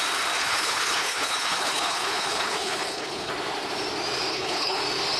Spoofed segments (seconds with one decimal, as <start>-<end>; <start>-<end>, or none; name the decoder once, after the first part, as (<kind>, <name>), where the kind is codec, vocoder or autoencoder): 0.4-3.3 (codec, HILCodec); 4.3-4.8

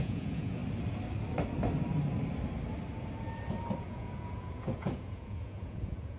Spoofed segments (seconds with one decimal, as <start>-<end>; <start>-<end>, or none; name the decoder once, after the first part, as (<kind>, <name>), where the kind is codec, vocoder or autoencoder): 0.0-0.6 (vocoder, Vocos); 3.8-6.2

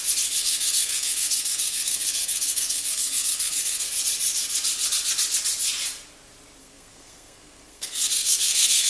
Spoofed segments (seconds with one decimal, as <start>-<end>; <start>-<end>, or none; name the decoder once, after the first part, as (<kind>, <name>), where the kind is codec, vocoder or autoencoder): 0.4-3.9 (codec, SNAC); 6.6-8.9

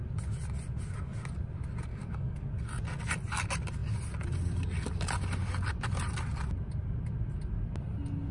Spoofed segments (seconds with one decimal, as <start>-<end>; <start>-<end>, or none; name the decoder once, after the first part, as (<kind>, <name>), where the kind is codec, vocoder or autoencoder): 1.9-2.5 (codec, DAC)

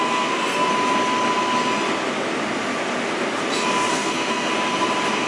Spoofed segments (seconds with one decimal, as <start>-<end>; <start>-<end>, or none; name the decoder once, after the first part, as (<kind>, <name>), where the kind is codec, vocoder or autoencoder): 0.0-0.7 (codec, SNAC); 3.9-4.5